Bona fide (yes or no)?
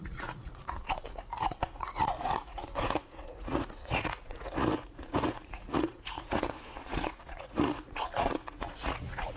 no